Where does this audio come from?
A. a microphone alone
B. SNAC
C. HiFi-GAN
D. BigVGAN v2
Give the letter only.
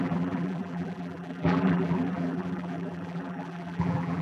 D